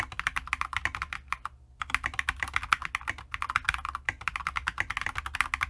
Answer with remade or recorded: recorded